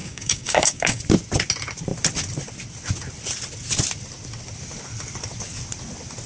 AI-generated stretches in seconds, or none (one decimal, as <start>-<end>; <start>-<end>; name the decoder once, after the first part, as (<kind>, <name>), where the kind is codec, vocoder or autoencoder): 0.0-1.0 (codec, DAC)